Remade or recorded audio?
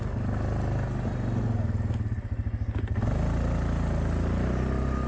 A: recorded